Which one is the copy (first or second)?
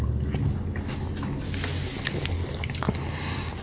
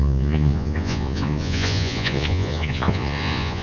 second